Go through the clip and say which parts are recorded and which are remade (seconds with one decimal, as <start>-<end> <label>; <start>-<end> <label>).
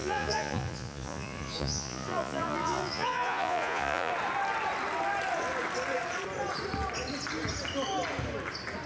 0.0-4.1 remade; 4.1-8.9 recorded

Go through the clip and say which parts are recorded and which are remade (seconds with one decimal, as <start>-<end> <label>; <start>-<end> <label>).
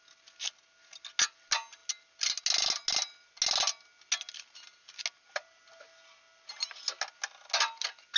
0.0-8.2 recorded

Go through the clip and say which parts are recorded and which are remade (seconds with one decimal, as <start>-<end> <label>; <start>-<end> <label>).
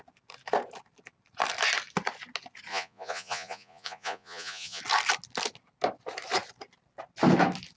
0.0-2.7 recorded; 2.7-4.8 remade; 4.8-7.8 recorded